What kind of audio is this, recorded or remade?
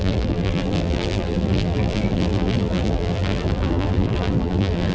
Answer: remade